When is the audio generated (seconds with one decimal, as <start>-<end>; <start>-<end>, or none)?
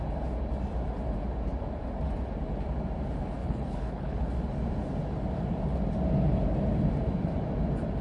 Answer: 3.4-4.3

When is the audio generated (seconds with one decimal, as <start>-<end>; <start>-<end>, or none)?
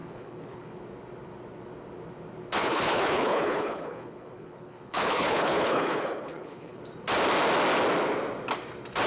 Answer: 0.0-0.8; 2.6-6.8